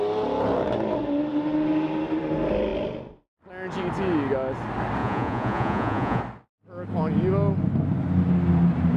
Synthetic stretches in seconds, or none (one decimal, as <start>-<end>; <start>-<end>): 5.0-6.2